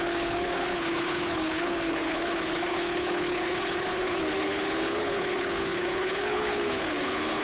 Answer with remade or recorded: remade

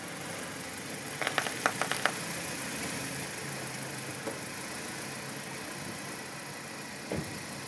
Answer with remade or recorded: recorded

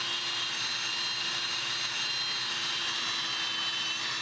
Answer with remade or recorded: recorded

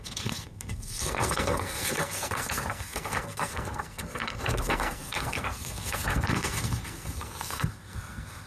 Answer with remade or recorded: remade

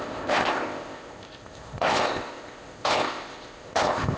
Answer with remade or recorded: remade